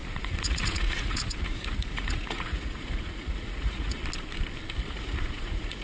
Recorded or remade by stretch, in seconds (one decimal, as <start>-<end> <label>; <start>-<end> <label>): 0.0-4.0 remade; 4.0-4.8 recorded; 4.8-5.8 remade